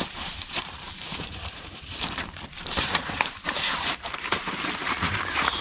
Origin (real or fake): fake